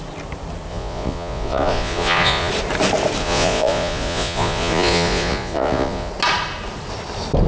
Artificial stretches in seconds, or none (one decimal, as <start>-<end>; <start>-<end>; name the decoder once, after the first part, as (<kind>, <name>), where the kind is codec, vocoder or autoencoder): 0.7-2.5 (vocoder, Vocos); 3.2-6.1